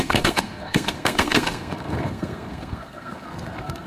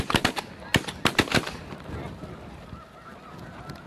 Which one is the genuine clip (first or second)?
second